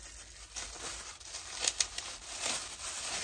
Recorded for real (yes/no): yes